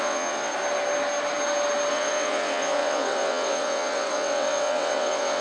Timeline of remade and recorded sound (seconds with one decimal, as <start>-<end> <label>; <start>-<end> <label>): 0.0-0.5 remade; 0.5-1.9 recorded; 1.9-5.4 remade